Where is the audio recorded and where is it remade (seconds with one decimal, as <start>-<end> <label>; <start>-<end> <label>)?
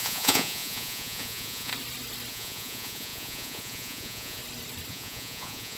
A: 0.0-1.7 remade; 1.7-2.3 recorded; 2.3-4.4 remade; 4.4-4.9 recorded; 4.9-5.8 remade